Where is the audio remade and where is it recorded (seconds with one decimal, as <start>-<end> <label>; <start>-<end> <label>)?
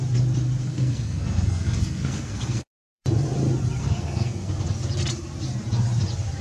0.0-0.6 recorded; 0.6-3.0 remade; 3.0-3.8 recorded; 3.8-4.5 remade; 4.5-6.4 recorded